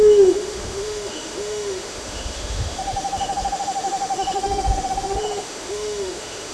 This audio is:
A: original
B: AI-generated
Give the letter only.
B